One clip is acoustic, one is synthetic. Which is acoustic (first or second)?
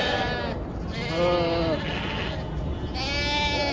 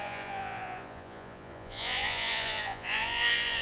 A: first